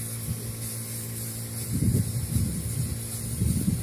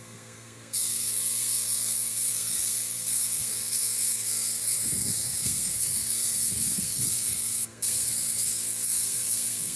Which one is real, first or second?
first